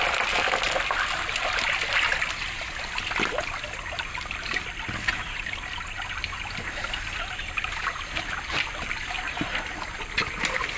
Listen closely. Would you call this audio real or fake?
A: real